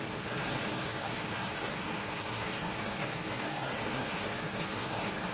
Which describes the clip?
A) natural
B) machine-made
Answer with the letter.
B